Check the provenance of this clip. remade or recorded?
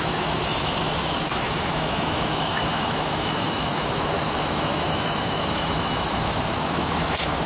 remade